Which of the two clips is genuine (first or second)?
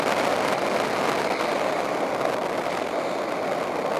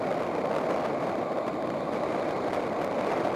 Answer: first